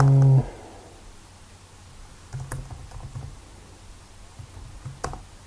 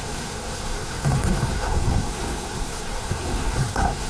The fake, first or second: second